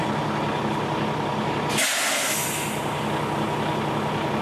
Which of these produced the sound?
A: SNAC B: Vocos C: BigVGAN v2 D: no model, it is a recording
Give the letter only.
D